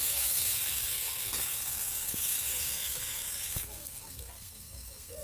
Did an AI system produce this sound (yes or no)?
yes